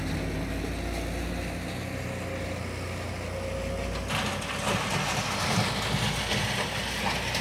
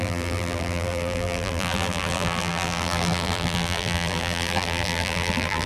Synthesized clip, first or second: second